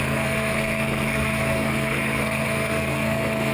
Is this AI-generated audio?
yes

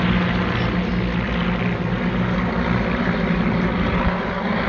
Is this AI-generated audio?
no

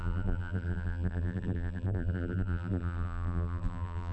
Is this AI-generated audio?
yes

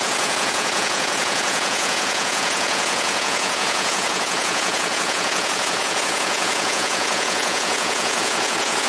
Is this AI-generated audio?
yes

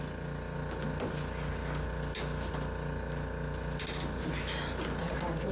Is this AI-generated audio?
no